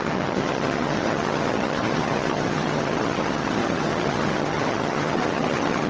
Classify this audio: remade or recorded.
remade